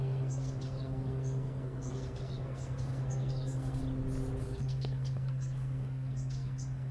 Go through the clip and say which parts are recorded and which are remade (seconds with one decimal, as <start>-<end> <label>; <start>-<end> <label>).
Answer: 0.0-3.8 remade; 3.8-4.4 recorded; 4.4-6.9 remade

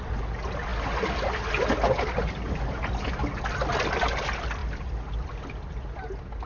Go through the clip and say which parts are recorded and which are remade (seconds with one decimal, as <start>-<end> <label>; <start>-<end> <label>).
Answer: 0.0-6.5 recorded